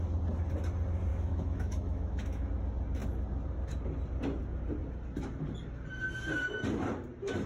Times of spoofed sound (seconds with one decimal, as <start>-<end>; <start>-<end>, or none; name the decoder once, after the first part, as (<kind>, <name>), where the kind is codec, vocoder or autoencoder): 1.1-2.5 (autoencoder, DAC-VAE)